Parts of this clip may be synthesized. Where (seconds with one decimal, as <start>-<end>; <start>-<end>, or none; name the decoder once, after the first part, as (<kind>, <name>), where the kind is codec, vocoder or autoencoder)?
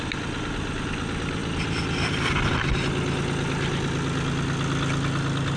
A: none